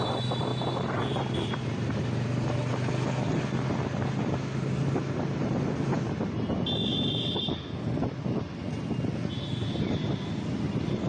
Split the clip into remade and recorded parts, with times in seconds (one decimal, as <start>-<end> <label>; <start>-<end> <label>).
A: 0.0-0.5 recorded; 0.5-2.0 remade; 2.0-6.9 recorded; 6.9-7.5 remade; 7.5-11.1 recorded